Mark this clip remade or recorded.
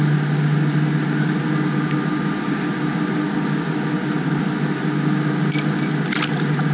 recorded